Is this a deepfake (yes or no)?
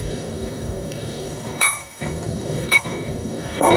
yes